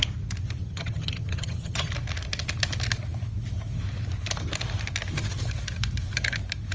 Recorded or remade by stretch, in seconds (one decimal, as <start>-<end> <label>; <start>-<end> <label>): 0.0-0.6 recorded; 0.6-1.9 remade; 1.9-6.7 recorded